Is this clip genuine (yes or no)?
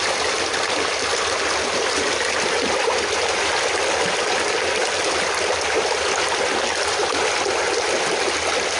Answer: yes